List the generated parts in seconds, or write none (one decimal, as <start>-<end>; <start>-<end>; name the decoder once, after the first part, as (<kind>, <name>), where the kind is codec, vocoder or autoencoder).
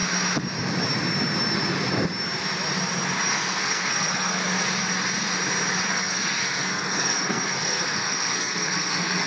3.3-4.4 (codec, SNAC); 5.9-9.3